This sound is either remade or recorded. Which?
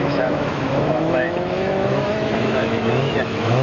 remade